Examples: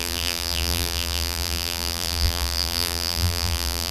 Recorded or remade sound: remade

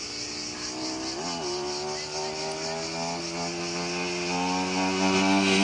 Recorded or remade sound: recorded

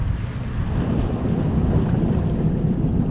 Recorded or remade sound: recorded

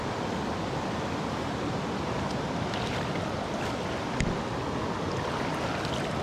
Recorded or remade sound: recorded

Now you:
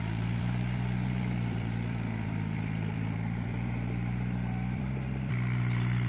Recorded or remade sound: remade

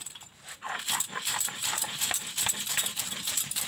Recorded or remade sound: remade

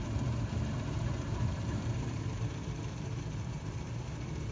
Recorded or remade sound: remade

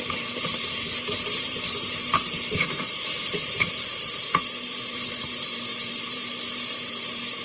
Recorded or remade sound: remade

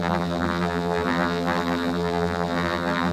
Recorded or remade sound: remade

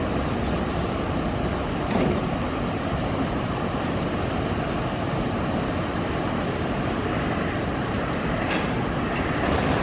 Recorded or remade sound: recorded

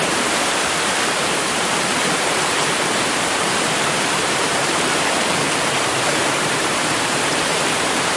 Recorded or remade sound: remade